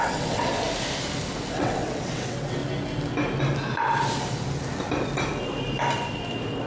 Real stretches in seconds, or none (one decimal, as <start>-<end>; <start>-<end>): 0.5-1.5; 2.6-6.7